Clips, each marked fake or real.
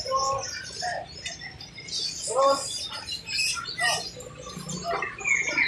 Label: real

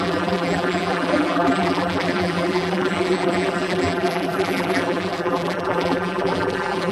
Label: fake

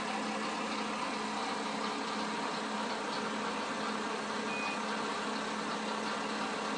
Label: real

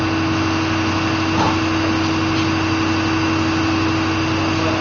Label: real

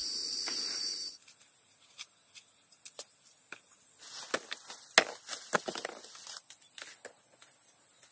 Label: real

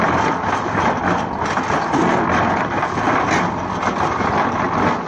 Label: real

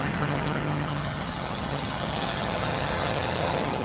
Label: fake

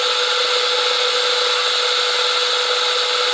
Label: real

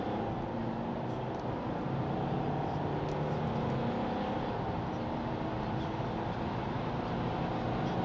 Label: real